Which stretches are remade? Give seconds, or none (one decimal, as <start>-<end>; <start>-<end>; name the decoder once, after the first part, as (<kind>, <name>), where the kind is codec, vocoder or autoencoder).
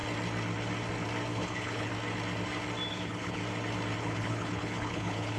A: 1.3-1.9 (codec, HILCodec); 2.9-3.4; 4.0-5.4